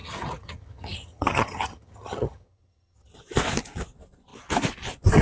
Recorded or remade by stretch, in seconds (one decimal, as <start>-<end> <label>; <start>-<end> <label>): 0.0-3.1 remade; 3.1-5.2 recorded